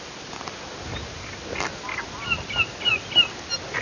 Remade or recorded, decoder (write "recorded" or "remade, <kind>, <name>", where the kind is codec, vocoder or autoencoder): recorded